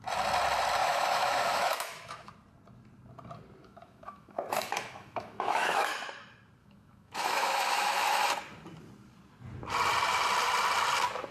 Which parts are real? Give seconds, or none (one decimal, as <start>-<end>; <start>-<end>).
0.0-0.8; 2.3-3.6; 5.9-6.6; 8.3-11.3